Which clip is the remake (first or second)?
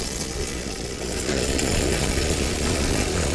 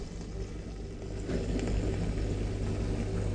first